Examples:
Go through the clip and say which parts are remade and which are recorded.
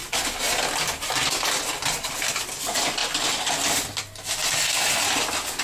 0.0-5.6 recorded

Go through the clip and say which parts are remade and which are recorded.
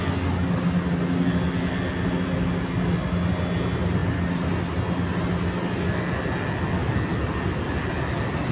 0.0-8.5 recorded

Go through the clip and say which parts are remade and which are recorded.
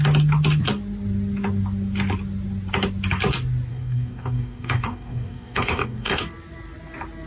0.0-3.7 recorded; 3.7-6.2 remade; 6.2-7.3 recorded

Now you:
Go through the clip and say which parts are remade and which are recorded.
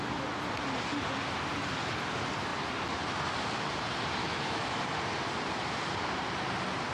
0.0-4.2 recorded; 4.2-4.8 remade; 4.8-6.9 recorded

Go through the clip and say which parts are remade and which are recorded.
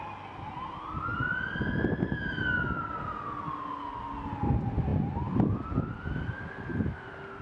0.0-7.4 recorded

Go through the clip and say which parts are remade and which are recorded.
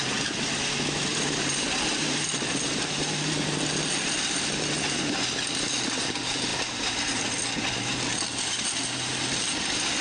0.0-1.1 recorded; 1.1-3.3 remade; 3.3-10.0 recorded